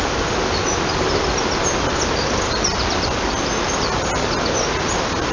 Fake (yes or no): no